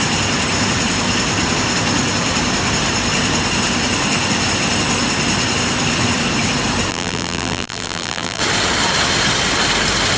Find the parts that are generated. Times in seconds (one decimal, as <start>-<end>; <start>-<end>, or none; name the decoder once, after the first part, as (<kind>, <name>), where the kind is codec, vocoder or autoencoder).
6.9-8.4 (vocoder, BigVGAN v2)